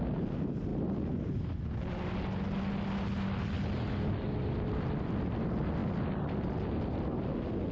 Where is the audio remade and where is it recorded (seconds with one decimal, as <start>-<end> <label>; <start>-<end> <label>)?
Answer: 0.0-7.7 recorded

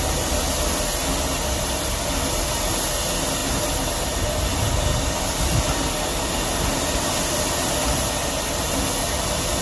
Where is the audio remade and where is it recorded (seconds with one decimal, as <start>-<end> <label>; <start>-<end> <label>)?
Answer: 0.0-9.6 recorded

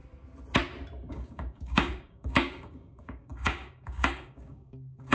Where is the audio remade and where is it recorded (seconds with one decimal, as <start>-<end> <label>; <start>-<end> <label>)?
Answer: 0.0-1.1 recorded; 1.1-5.1 remade

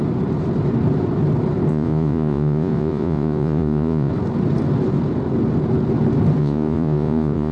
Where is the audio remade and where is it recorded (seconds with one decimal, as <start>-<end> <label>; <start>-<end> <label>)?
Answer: 0.0-1.7 recorded; 1.7-4.1 remade; 4.1-6.4 recorded; 6.4-7.5 remade

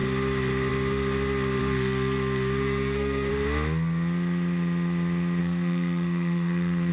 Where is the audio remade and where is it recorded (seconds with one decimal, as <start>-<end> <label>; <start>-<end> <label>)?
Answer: 0.0-1.6 recorded; 1.6-3.3 remade; 3.3-5.4 recorded; 5.4-6.9 remade

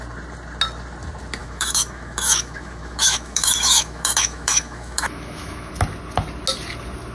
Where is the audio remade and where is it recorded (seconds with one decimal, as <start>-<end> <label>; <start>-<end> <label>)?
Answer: 0.0-1.4 recorded; 1.4-5.7 remade; 5.7-7.1 recorded

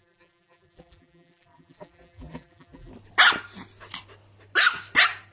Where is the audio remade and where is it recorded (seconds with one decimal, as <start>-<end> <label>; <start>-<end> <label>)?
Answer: 0.0-2.9 remade; 2.9-5.3 recorded

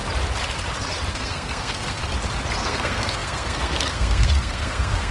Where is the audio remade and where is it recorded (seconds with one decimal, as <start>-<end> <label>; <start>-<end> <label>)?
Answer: 0.0-1.1 recorded; 1.1-2.0 remade; 2.0-2.6 recorded; 2.6-5.1 remade